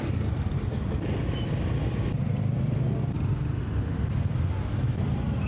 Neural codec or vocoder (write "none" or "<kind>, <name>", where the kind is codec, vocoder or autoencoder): none